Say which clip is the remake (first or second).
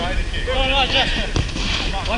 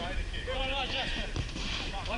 second